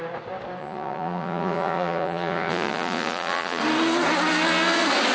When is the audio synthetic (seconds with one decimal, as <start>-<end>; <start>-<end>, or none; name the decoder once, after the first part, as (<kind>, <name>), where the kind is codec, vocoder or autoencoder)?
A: 0.6-3.6 (vocoder, Vocos)